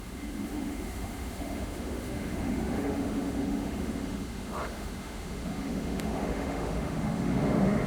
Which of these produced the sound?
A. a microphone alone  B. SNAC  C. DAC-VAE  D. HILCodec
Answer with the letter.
C